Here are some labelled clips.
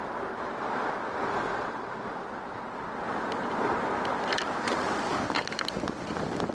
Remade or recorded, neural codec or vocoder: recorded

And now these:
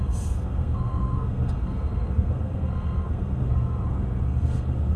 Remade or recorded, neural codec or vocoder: remade, codec, SNAC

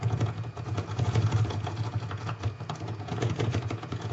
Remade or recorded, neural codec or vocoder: remade, vocoder, Vocos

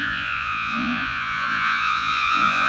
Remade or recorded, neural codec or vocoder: remade, vocoder, Vocos